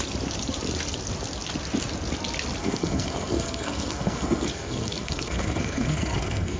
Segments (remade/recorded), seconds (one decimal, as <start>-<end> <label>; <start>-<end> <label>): 0.0-2.6 recorded; 2.6-6.6 remade